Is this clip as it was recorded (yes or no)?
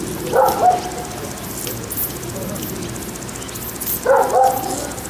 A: yes